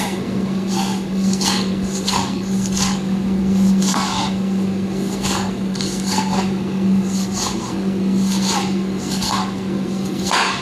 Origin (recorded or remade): remade